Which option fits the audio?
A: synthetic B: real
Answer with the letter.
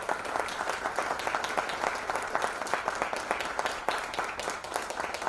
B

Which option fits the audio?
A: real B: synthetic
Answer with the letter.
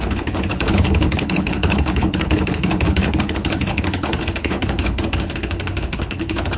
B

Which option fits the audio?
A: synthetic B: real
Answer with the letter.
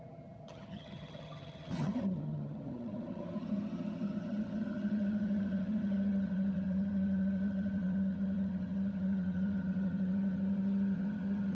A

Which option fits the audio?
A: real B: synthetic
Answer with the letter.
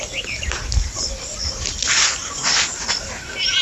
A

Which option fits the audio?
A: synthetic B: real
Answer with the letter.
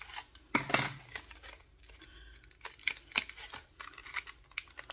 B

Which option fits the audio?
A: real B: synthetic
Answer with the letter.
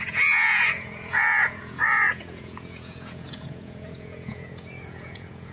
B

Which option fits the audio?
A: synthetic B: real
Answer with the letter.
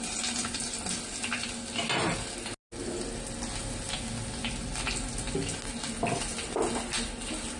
B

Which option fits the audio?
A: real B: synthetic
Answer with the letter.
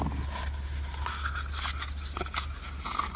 A